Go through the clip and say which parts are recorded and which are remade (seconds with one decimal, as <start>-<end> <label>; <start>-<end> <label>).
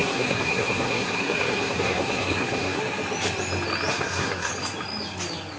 0.0-2.8 remade; 2.8-3.9 recorded; 3.9-4.5 remade; 4.5-5.6 recorded